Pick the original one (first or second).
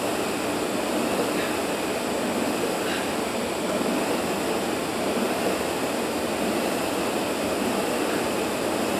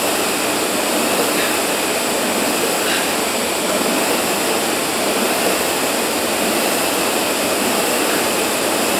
first